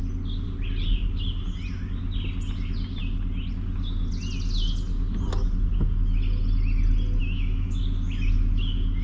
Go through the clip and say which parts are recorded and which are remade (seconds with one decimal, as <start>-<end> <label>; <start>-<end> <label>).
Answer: 0.0-7.2 recorded; 7.2-7.8 remade; 7.8-9.0 recorded